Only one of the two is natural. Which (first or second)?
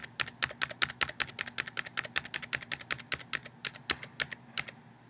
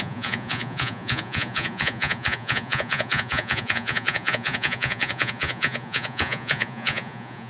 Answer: first